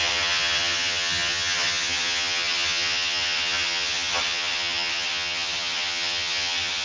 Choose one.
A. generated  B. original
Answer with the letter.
A